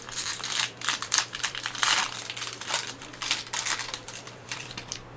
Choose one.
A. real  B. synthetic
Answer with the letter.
B